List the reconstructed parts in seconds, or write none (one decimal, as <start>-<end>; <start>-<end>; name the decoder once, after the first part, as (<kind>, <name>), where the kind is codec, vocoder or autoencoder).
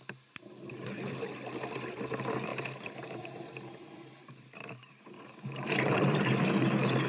2.5-7.1 (vocoder, BigVGAN v2)